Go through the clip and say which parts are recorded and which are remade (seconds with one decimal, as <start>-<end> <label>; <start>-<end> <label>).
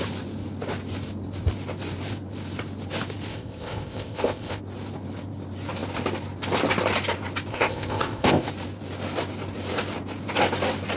0.0-3.3 recorded; 3.3-4.6 remade; 4.6-7.5 recorded; 7.5-8.5 remade; 8.5-11.0 recorded